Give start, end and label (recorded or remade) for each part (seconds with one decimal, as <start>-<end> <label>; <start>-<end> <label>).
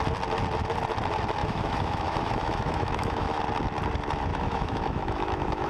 0.0-1.4 recorded; 1.4-3.4 remade; 3.4-4.3 recorded; 4.3-5.7 remade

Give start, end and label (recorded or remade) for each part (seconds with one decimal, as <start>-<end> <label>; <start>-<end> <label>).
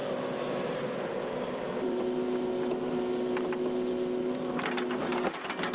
0.0-2.0 remade; 2.0-5.7 recorded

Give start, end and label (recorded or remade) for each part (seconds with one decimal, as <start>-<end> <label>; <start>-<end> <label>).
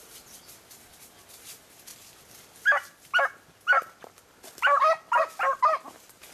0.0-1.9 remade; 1.9-5.2 recorded; 5.2-6.3 remade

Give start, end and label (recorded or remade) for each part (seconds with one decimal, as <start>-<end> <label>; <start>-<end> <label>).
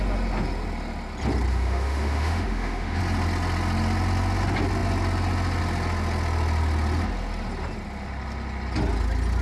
0.0-1.5 recorded; 1.5-3.0 remade; 3.0-9.4 recorded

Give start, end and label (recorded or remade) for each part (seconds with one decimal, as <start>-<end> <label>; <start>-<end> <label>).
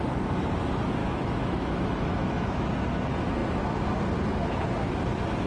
0.0-1.0 recorded; 1.0-2.7 remade; 2.7-5.5 recorded